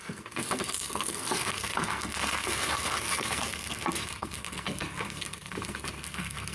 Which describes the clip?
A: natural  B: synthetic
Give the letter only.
B